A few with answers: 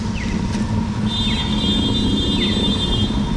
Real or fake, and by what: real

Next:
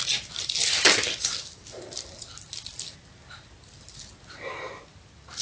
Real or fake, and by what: real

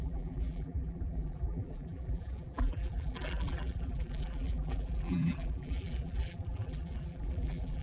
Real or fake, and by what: fake, vocoder, BigVGAN v2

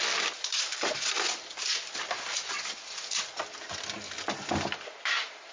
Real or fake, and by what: real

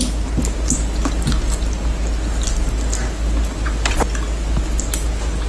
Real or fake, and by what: real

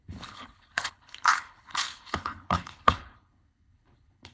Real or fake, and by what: fake, codec, HILCodec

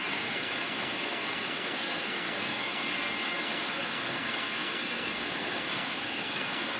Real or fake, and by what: fake, codec, SNAC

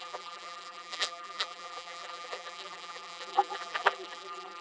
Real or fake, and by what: fake, vocoder, BigVGAN v2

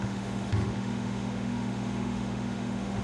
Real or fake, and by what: fake, autoencoder, DAC-VAE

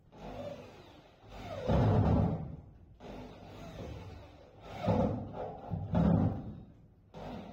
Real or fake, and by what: real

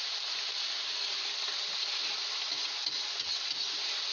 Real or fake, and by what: real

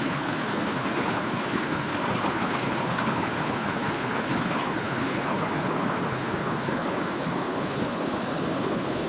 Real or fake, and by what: fake, codec, HILCodec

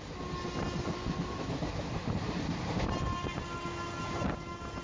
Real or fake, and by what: real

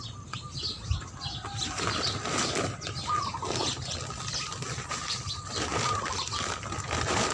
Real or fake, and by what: real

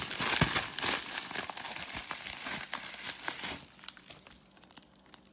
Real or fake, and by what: fake, vocoder, BigVGAN v2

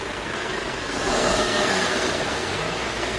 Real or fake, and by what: fake, codec, SNAC